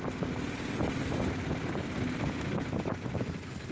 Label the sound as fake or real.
real